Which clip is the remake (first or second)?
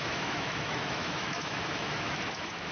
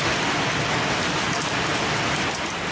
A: first